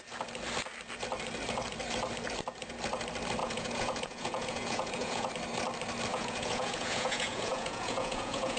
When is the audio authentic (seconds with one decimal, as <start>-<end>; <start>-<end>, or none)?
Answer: 0.0-3.4; 5.3-6.1